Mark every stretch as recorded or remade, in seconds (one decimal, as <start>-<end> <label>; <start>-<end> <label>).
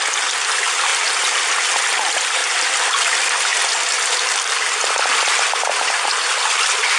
0.0-7.0 recorded